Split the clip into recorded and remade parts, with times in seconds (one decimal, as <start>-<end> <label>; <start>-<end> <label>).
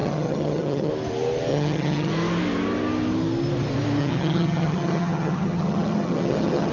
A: 0.0-0.9 remade; 0.9-1.5 recorded; 1.5-2.1 remade; 2.1-4.0 recorded; 4.0-6.7 remade